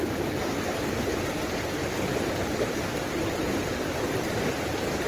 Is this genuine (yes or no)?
yes